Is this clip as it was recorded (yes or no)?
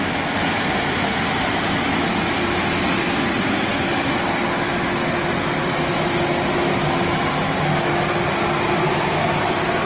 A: yes